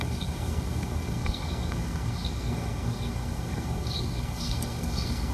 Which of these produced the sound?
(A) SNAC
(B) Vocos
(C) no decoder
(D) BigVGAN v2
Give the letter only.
A